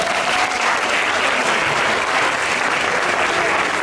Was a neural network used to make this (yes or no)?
no